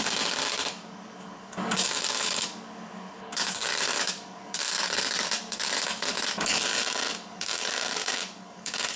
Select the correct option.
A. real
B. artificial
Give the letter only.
B